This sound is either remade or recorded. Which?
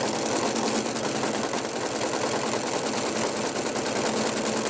recorded